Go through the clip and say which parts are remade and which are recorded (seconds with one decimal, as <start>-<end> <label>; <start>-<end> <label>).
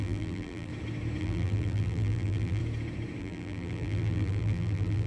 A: 0.0-0.7 remade; 0.7-1.2 recorded; 1.2-2.6 remade; 2.6-3.2 recorded; 3.2-5.1 remade